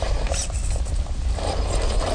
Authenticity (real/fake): real